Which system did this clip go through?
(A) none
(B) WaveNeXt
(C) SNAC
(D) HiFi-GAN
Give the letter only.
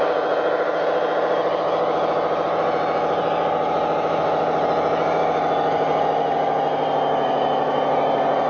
A